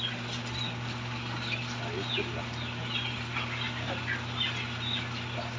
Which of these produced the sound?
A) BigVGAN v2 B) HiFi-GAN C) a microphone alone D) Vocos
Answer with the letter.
C